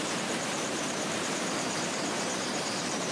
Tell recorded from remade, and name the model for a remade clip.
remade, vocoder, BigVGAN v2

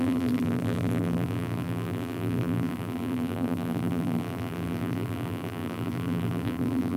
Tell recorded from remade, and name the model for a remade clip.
remade, vocoder, BigVGAN v2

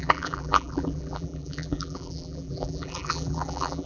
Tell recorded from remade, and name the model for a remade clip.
remade, vocoder, BigVGAN v2